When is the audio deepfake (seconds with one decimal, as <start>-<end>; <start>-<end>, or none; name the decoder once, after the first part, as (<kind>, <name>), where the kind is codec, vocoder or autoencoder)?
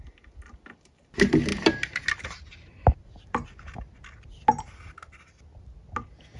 none